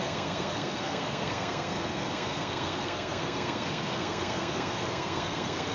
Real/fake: fake